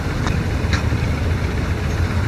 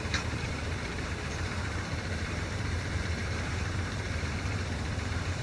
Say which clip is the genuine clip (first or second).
first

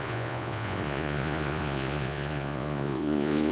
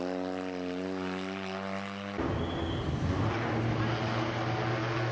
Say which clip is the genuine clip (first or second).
second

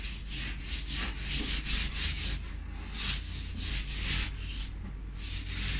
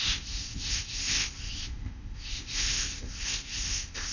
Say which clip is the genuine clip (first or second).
first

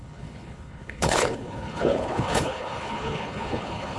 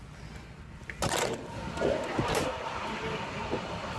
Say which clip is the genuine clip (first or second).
second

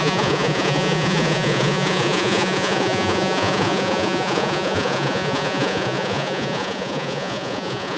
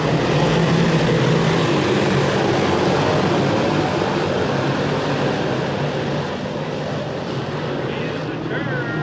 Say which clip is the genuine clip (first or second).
second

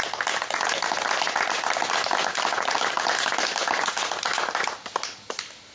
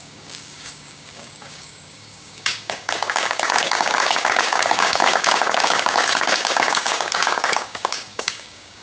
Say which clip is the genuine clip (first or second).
first